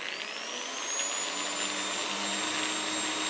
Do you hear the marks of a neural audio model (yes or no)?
no